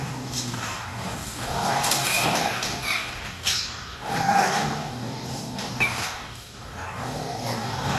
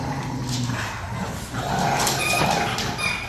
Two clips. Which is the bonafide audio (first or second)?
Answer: second